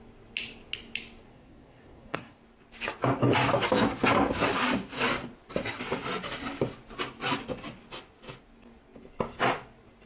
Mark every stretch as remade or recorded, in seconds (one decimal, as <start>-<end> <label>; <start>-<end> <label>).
0.0-1.3 recorded; 1.3-2.4 remade; 2.4-10.1 recorded